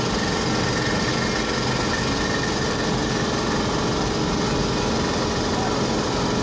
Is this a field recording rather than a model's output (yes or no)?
yes